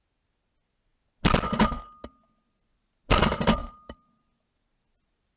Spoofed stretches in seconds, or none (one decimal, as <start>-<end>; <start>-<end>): 3.6-4.2